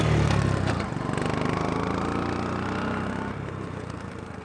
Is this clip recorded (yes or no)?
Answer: yes